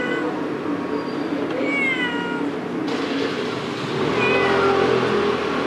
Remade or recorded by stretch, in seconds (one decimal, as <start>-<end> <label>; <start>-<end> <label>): 0.0-5.7 recorded